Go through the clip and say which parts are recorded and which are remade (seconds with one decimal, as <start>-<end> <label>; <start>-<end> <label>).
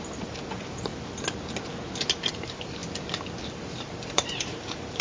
0.0-0.9 remade; 0.9-2.3 recorded; 2.3-2.8 remade; 2.8-3.4 recorded; 3.4-5.0 remade